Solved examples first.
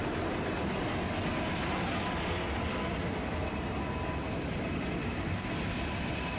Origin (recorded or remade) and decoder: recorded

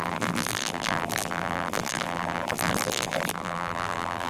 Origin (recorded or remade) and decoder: remade, vocoder, BigVGAN v2